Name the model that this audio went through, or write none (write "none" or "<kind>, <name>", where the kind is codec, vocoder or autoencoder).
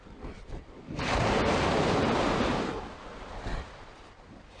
none